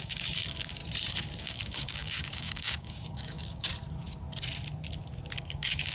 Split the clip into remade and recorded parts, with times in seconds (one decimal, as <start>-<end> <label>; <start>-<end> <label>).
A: 0.0-0.8 remade; 0.8-1.4 recorded; 1.4-3.7 remade; 3.7-5.4 recorded; 5.4-5.9 remade